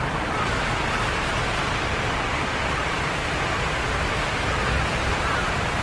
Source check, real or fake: fake